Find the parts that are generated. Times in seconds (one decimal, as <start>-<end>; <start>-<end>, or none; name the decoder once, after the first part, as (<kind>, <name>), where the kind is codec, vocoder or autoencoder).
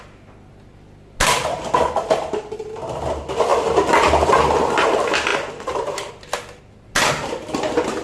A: 5.3-6.1 (vocoder, BigVGAN v2)